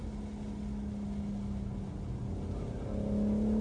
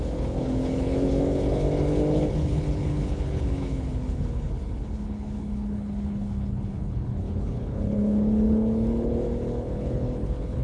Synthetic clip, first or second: second